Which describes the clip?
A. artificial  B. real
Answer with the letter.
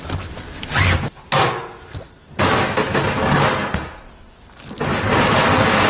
B